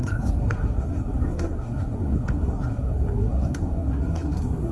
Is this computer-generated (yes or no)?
yes